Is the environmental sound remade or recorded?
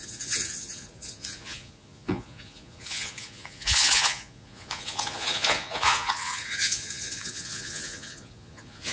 remade